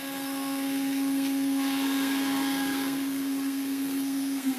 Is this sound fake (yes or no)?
yes